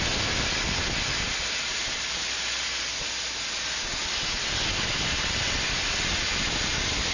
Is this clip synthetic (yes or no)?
no